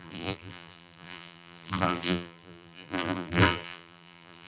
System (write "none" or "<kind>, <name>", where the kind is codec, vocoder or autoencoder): vocoder, BigVGAN v2